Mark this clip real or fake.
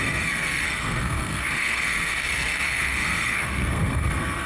fake